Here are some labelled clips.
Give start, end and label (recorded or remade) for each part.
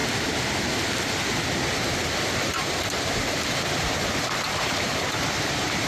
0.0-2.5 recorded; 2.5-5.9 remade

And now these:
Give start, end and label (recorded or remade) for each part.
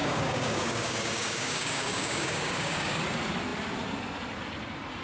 0.0-3.0 remade; 3.0-5.0 recorded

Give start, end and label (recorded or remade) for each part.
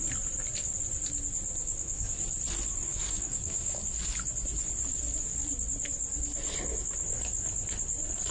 0.0-1.6 recorded; 1.6-2.1 remade; 2.1-2.9 recorded; 2.9-3.8 remade; 3.8-8.3 recorded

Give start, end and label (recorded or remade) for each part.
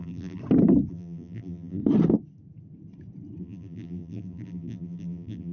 0.0-0.4 remade; 0.4-0.9 recorded; 0.9-1.8 remade; 1.8-3.4 recorded; 3.4-5.5 remade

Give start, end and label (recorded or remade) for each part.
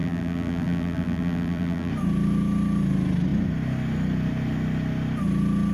0.0-1.9 remade; 1.9-5.7 recorded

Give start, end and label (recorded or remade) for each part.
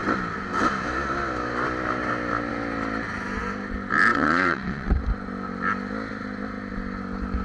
0.0-4.1 recorded; 4.1-5.0 remade; 5.0-7.4 recorded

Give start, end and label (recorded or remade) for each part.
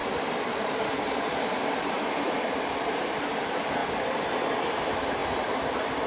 0.0-1.0 recorded; 1.0-3.8 remade; 3.8-4.7 recorded; 4.7-6.1 remade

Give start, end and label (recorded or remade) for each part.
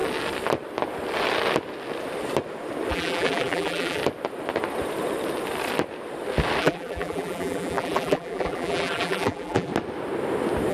0.0-2.9 recorded; 2.9-4.0 remade; 4.0-6.6 recorded; 6.6-9.7 remade; 9.7-10.7 recorded